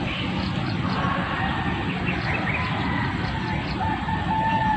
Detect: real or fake real